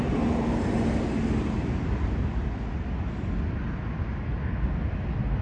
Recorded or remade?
recorded